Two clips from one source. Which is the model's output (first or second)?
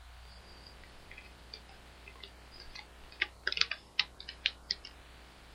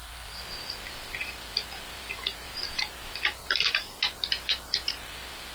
second